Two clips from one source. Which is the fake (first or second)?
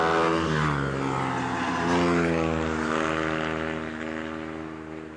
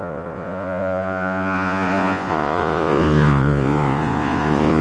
second